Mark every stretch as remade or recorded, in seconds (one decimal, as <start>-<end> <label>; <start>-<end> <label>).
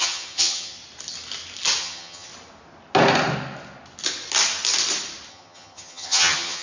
0.0-0.8 remade; 0.8-1.8 recorded; 1.8-2.3 remade; 2.3-5.3 recorded; 5.3-6.6 remade